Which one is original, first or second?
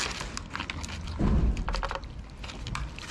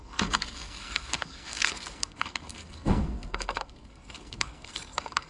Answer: first